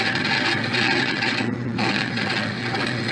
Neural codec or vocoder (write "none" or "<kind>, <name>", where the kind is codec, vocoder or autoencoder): vocoder, WaveNeXt